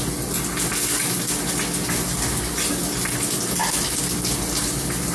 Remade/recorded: recorded